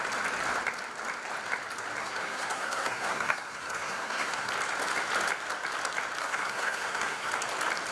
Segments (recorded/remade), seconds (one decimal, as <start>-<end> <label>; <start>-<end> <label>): 0.0-2.0 recorded; 2.0-4.5 remade; 4.5-6.2 recorded; 6.2-7.3 remade; 7.3-7.9 recorded